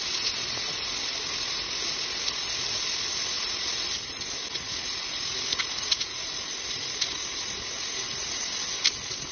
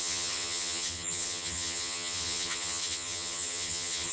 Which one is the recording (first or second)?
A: first